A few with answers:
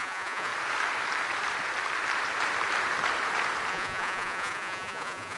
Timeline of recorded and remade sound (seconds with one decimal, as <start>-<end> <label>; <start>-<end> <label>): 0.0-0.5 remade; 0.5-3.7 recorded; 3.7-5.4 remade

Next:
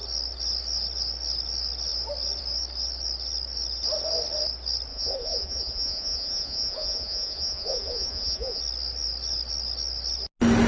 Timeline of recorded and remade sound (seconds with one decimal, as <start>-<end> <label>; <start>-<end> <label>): 0.0-4.9 recorded; 4.9-8.6 remade; 8.6-10.7 recorded

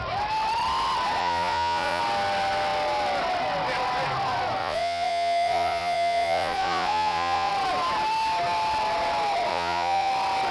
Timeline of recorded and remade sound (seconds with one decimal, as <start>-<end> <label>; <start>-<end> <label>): 0.0-1.2 recorded; 1.2-2.0 remade; 2.0-4.6 recorded; 4.6-7.5 remade; 7.5-9.5 recorded; 9.5-10.1 remade; 10.1-10.5 recorded